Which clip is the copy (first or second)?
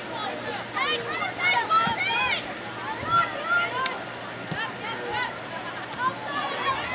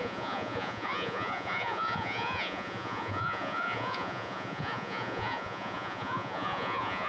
second